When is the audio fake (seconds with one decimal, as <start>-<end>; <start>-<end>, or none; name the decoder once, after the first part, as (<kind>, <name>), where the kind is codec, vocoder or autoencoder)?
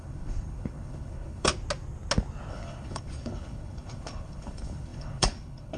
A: 0.0-1.5 (codec, HILCodec); 2.5-5.8